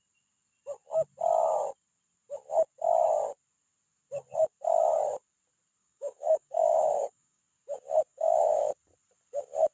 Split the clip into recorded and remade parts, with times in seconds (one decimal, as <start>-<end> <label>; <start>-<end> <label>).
0.0-5.8 recorded; 5.8-7.4 remade; 7.4-8.1 recorded; 8.1-8.7 remade; 8.7-9.7 recorded